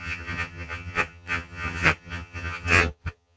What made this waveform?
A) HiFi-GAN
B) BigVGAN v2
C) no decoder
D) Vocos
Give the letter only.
A